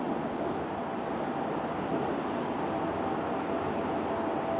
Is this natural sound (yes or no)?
yes